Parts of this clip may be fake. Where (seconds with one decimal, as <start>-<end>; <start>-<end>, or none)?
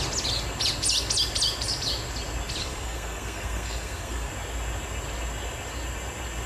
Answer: 2.6-4.3